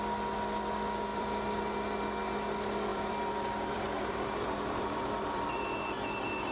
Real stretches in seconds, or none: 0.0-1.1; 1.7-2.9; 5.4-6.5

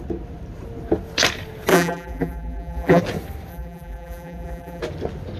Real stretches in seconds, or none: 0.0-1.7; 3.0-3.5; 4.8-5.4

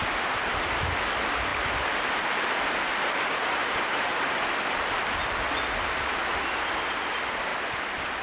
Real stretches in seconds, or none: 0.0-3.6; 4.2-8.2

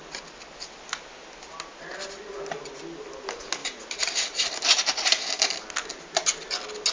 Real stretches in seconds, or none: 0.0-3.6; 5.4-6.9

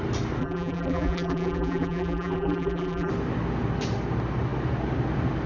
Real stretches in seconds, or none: 0.0-0.4; 3.1-5.5

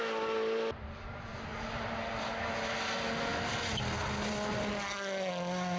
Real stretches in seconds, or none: 0.0-1.5; 2.0-5.8

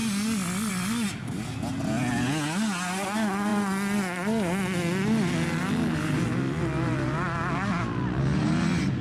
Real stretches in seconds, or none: 0.0-9.0

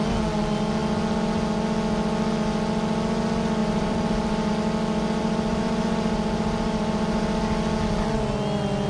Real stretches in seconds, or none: 0.0-3.6; 4.5-5.2; 7.4-8.9